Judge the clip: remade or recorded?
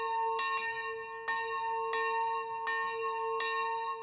recorded